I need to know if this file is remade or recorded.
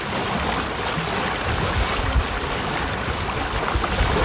recorded